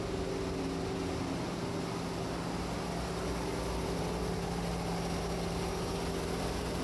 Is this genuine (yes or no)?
yes